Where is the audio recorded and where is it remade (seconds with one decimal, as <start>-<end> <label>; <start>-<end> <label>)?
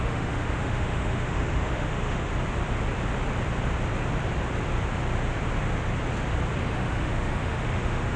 0.0-2.3 remade; 2.3-6.6 recorded; 6.6-8.2 remade